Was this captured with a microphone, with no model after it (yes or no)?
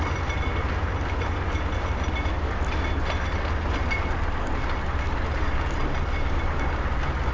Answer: yes